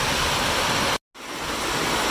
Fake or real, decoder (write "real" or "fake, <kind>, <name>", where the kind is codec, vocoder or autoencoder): real